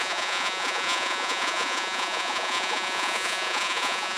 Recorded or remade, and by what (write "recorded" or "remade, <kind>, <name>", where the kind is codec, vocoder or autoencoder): remade, vocoder, Vocos